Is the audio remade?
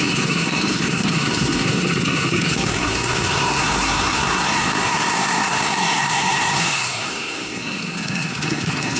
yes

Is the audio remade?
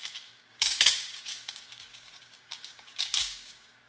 yes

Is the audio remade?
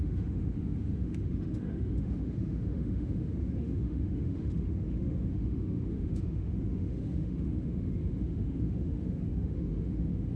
yes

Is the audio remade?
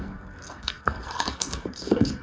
yes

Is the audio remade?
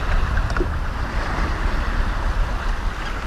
no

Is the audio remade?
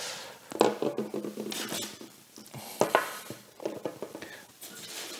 yes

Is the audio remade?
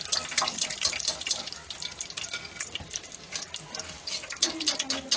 no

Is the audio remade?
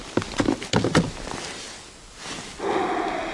no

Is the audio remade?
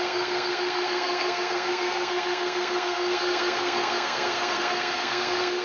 yes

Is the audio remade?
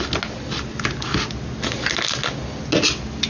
no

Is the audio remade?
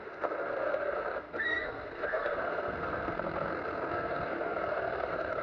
yes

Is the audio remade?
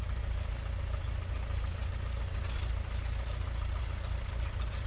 no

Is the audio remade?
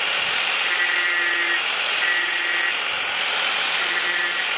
no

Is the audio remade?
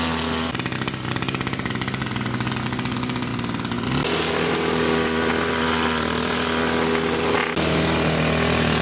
no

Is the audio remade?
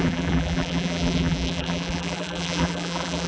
yes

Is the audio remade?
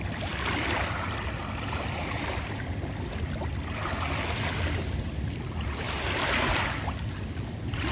no